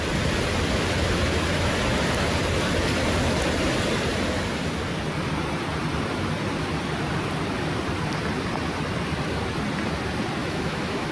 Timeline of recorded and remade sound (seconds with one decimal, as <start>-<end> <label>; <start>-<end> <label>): 0.0-10.4 recorded; 10.4-11.1 remade